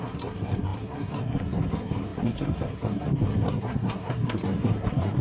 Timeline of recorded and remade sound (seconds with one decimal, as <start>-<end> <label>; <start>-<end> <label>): 0.0-5.2 remade